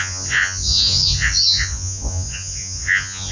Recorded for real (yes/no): no